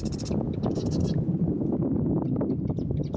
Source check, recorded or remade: remade